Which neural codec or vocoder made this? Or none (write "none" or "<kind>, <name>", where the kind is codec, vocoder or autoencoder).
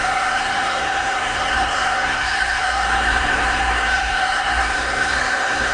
codec, SNAC